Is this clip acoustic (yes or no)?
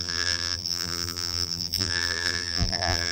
no